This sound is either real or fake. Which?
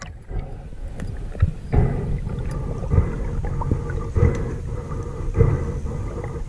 real